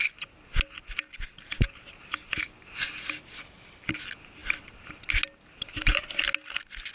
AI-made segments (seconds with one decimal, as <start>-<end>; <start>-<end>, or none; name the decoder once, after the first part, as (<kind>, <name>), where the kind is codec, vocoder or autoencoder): none